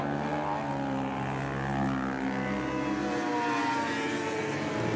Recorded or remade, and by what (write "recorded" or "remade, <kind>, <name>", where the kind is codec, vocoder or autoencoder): recorded